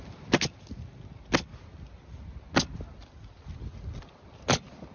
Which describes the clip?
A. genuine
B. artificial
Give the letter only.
A